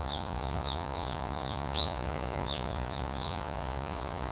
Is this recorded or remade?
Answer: remade